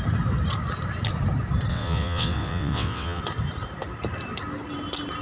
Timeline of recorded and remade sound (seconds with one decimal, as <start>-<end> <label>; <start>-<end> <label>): 0.0-1.7 recorded; 1.7-3.2 remade; 3.2-5.2 recorded